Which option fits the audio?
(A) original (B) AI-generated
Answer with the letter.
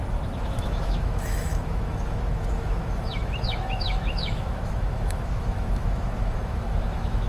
B